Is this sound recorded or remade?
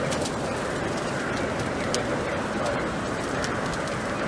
recorded